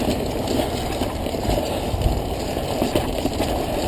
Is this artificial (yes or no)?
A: no